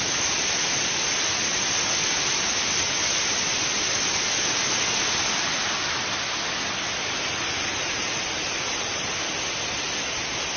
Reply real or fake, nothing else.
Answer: real